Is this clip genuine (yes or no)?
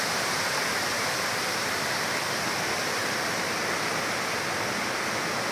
yes